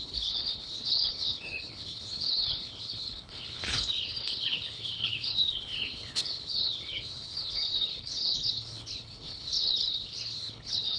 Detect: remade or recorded remade